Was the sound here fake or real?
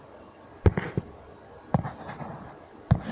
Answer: real